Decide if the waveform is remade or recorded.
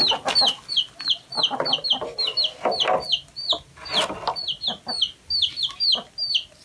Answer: recorded